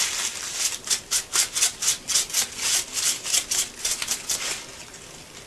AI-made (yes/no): yes